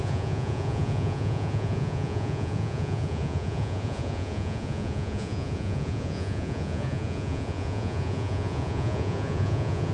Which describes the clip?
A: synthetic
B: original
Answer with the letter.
A